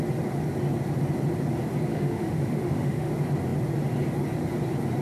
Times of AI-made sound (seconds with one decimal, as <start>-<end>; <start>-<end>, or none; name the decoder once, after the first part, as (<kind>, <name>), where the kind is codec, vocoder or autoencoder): 1.9-3.1 (autoencoder, DAC-VAE)